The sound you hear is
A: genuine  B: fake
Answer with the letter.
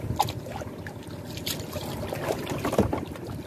A